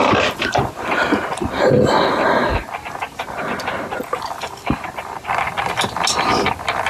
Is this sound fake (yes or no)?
no